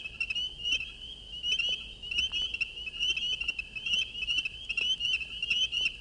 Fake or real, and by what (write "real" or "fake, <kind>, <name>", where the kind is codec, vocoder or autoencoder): real